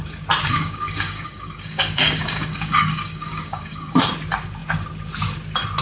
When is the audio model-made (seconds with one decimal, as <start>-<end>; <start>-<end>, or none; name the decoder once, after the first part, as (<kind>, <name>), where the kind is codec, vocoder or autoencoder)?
0.5-4.0 (codec, DAC)